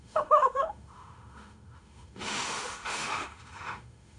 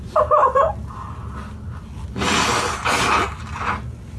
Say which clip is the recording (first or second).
second